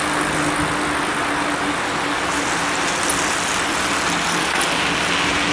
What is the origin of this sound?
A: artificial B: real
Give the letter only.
B